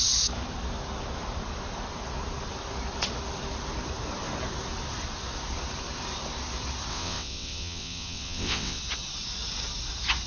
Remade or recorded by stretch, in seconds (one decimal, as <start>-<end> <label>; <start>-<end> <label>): 0.0-6.9 recorded; 6.9-8.8 remade; 8.8-10.3 recorded